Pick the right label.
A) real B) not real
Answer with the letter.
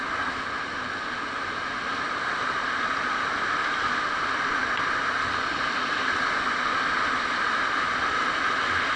A